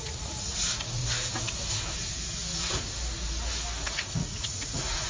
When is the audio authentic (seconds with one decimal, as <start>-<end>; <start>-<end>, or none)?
1.0-4.1